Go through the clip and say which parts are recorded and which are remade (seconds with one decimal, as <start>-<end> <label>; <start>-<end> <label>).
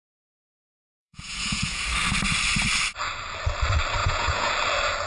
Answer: 0.0-1.0 recorded; 1.0-1.8 remade; 1.8-4.0 recorded; 4.0-4.5 remade; 4.5-5.1 recorded